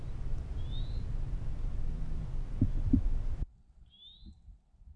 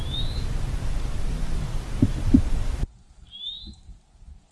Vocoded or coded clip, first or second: second